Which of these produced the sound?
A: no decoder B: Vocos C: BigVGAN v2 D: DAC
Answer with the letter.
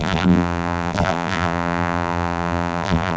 C